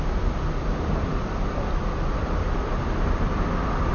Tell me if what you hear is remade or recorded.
remade